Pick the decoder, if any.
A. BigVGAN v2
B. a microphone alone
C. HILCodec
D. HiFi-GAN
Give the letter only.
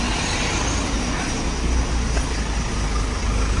B